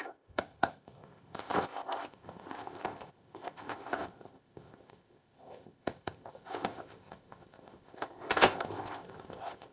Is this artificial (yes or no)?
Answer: yes